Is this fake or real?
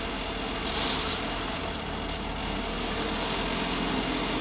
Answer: real